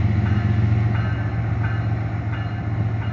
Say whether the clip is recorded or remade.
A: recorded